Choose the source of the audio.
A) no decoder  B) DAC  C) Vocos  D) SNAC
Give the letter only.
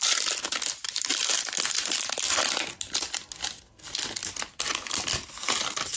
A